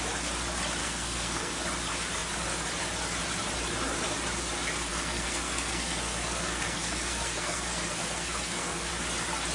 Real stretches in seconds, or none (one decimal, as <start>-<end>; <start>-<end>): 0.0-0.8; 1.6-4.9; 8.9-9.5